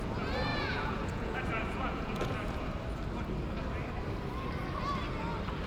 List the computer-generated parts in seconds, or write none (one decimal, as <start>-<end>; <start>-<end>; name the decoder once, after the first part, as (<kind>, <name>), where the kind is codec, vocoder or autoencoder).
0.5-2.7 (vocoder, Vocos)